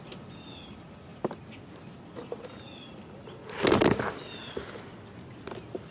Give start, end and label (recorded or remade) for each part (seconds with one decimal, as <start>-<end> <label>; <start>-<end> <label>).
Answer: 0.0-5.9 recorded